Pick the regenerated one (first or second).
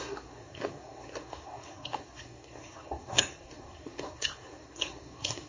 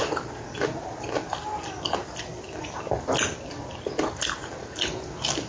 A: first